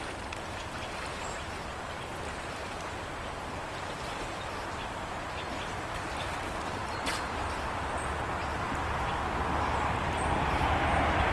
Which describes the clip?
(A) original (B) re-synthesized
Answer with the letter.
A